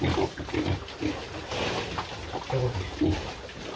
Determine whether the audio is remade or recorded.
recorded